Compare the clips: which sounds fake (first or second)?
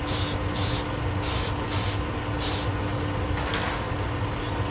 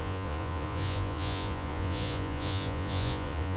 second